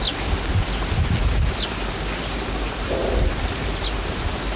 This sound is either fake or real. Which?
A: real